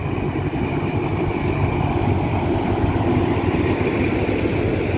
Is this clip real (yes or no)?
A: yes